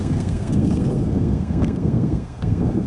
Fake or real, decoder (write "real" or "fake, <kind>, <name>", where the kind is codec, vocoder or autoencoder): fake, codec, SNAC